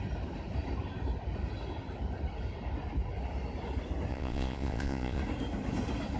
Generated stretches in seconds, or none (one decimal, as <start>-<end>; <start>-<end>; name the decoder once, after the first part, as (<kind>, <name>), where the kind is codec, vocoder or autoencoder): 4.1-5.2 (vocoder, Vocos)